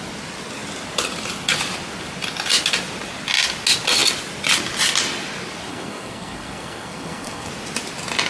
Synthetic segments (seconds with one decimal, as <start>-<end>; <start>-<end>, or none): 5.7-7.5